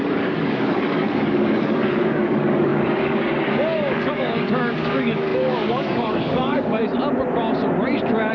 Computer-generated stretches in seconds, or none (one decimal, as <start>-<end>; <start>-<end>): 0.0-6.8